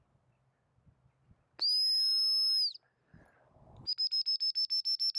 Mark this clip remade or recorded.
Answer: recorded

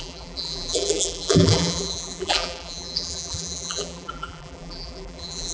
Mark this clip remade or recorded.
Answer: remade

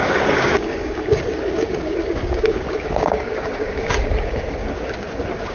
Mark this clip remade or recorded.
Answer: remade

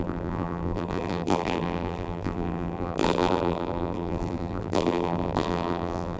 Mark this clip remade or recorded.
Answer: remade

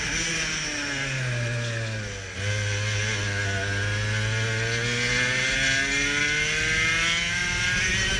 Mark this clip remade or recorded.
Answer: recorded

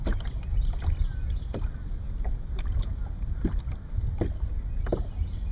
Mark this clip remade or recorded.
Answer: recorded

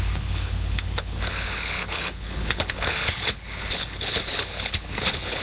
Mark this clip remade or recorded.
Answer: remade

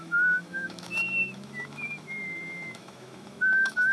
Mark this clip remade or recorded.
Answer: remade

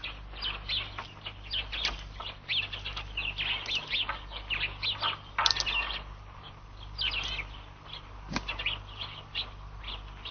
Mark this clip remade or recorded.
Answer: recorded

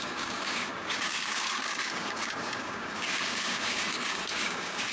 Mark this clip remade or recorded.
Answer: remade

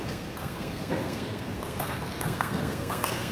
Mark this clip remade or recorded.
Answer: remade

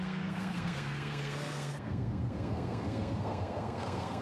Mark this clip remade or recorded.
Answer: remade